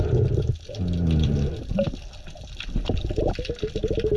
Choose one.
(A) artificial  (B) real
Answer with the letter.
B